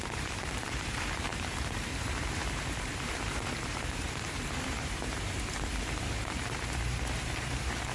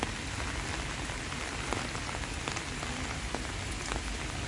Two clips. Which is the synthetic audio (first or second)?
first